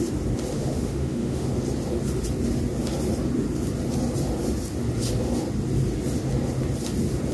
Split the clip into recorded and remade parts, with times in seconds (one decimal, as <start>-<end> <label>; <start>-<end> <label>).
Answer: 0.0-0.5 recorded; 0.5-1.5 remade; 1.5-7.3 recorded